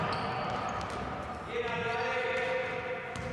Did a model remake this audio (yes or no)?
no